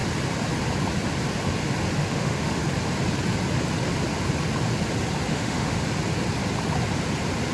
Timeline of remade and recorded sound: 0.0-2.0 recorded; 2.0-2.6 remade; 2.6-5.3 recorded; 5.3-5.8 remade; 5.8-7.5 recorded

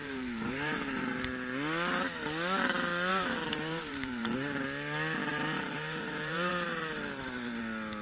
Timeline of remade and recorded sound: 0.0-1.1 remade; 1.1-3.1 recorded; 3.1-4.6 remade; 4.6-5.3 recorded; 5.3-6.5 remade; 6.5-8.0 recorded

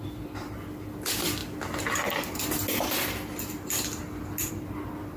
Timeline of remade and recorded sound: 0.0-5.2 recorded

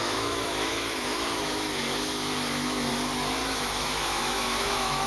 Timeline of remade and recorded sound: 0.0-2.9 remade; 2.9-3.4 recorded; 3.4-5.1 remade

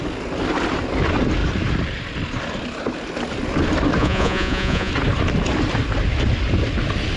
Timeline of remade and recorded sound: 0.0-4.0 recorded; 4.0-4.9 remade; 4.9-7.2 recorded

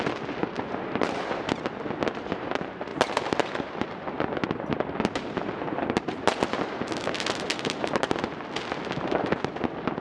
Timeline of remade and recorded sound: 0.0-10.0 recorded